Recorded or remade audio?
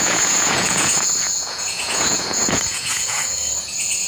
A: remade